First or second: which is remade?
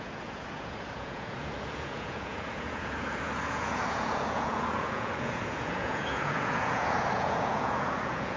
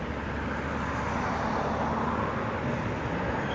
first